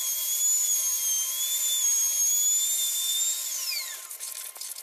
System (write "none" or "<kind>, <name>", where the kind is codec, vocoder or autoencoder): none